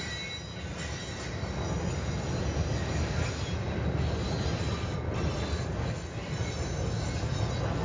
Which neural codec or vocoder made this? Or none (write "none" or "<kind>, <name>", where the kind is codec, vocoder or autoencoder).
none